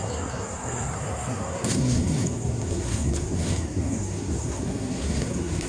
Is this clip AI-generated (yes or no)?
yes